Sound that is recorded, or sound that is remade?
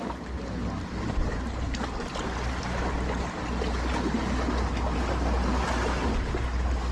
recorded